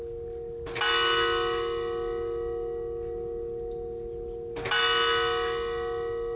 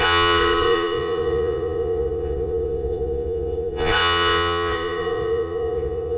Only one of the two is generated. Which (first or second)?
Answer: second